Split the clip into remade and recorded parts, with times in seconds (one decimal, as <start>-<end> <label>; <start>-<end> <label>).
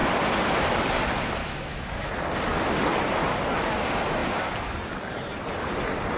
0.0-1.4 recorded; 1.4-2.1 remade; 2.1-6.2 recorded